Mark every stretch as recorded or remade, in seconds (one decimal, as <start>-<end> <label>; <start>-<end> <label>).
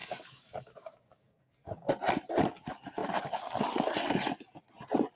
0.0-1.9 remade; 1.9-5.2 recorded